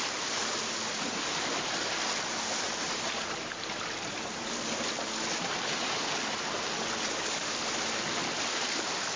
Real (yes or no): yes